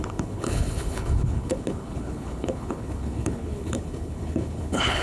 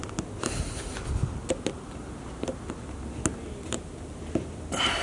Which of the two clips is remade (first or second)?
first